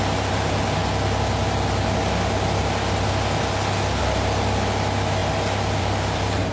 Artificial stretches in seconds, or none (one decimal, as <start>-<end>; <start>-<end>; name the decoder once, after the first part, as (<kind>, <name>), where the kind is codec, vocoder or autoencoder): 0.0-0.8 (vocoder, BigVGAN v2); 4.0-5.2; 5.8-6.5